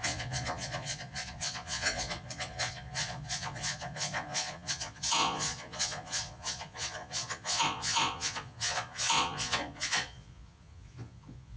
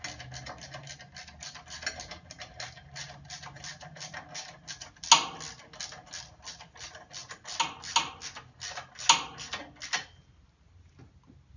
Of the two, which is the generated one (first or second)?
first